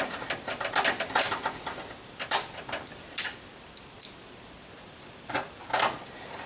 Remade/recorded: remade